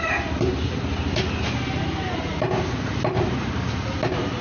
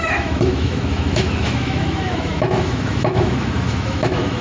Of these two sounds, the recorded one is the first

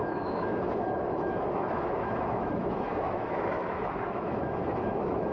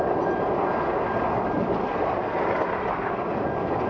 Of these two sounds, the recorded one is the second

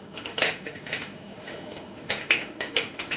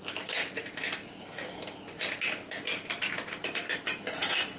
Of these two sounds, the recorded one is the second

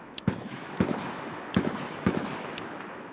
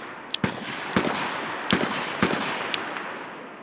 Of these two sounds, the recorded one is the second